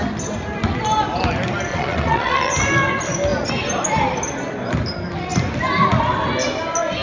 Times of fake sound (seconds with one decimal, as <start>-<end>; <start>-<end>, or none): 1.7-2.5